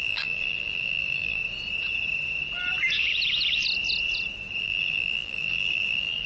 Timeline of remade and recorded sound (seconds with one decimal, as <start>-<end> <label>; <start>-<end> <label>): 0.0-1.4 remade; 1.4-4.6 recorded; 4.6-6.3 remade